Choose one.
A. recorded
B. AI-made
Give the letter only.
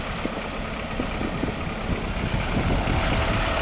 A